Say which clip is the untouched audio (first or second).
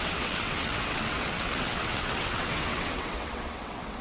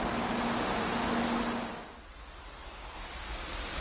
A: second